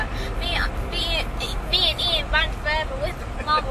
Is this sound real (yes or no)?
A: yes